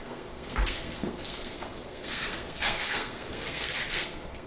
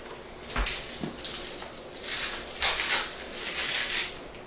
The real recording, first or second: second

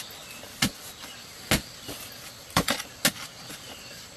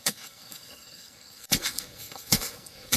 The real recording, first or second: first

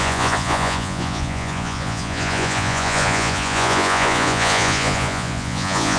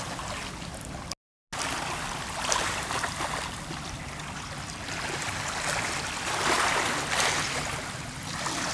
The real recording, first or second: second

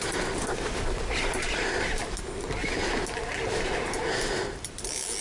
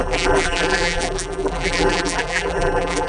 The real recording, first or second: first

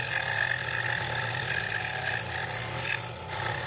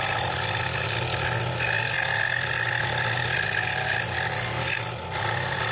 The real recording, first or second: second